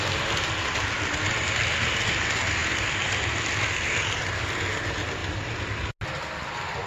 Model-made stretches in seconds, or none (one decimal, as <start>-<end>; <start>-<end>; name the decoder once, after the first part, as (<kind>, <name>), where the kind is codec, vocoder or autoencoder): 5.2-5.9 (vocoder, BigVGAN v2)